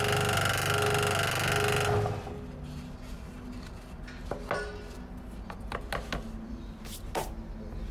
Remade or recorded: recorded